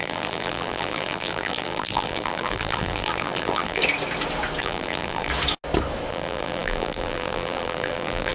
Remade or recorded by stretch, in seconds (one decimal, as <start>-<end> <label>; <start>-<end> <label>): 0.0-3.8 remade; 3.8-4.6 recorded; 4.6-5.3 remade; 5.3-6.1 recorded; 6.1-8.3 remade